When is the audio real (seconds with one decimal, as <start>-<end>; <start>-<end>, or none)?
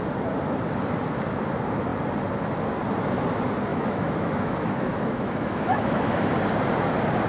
0.0-3.7; 6.3-7.3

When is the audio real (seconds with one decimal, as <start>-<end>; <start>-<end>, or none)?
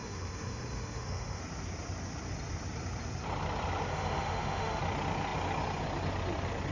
1.4-3.9; 4.8-6.7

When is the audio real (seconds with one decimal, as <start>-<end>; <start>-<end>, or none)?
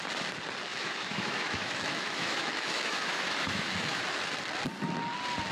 0.0-0.7; 4.0-5.5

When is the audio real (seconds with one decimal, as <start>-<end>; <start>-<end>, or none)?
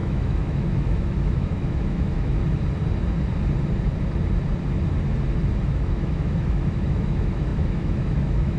2.4-5.7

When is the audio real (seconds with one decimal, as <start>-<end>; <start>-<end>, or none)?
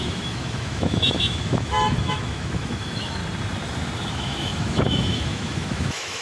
3.2-4.1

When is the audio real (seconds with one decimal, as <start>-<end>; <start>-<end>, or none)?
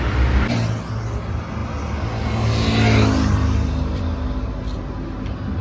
0.0-5.6